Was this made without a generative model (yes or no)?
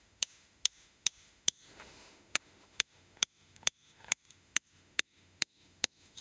no